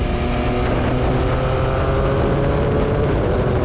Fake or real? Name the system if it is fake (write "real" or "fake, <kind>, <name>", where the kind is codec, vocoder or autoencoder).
real